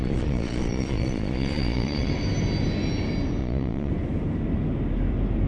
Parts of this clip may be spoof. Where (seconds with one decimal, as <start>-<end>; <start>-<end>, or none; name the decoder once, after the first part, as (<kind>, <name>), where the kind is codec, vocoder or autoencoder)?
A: 0.0-2.1 (vocoder, Vocos); 3.4-3.9